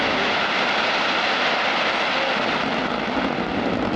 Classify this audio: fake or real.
real